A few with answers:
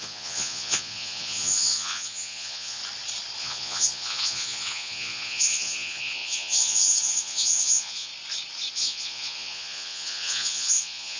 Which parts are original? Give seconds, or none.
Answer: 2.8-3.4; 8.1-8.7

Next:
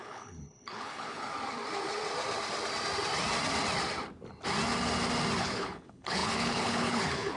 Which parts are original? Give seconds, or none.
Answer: 1.3-5.4

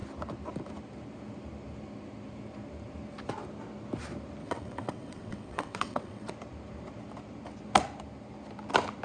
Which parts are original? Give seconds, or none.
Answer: 0.0-4.4; 6.3-9.0

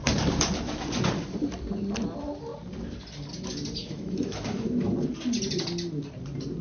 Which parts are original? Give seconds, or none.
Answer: 0.0-3.8; 4.4-6.6

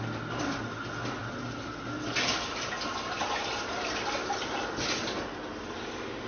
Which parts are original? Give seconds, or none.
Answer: 0.0-6.3

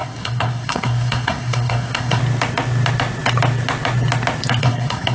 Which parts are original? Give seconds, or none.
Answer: 2.2-4.6